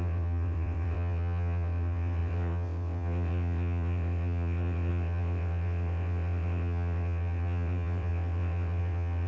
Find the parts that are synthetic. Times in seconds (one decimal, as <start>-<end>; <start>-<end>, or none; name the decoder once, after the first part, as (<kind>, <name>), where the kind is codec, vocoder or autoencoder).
0.0-9.3 (vocoder, WaveNeXt)